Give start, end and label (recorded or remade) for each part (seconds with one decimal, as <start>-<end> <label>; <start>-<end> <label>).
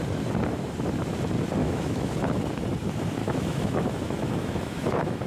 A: 0.0-1.6 recorded; 1.6-2.1 remade; 2.1-3.2 recorded; 3.2-5.3 remade